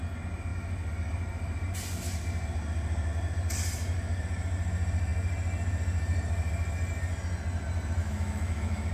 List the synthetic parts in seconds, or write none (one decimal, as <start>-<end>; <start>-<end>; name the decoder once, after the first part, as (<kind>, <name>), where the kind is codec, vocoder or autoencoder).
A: 8.0-8.9 (autoencoder, DAC-VAE)

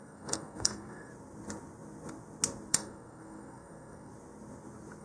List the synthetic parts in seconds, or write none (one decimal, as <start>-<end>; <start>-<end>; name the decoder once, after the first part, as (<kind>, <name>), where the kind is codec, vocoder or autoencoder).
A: 0.0-1.1 (codec, SNAC); 2.7-4.1

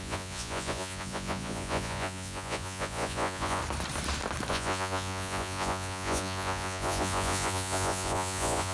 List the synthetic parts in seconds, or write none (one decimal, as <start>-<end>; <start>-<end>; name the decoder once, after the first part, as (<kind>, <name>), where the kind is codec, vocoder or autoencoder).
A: 0.0-3.6 (vocoder, Vocos); 4.5-8.7

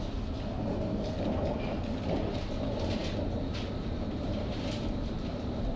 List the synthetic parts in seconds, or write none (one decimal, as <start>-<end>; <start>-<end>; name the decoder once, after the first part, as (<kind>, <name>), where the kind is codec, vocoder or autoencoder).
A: none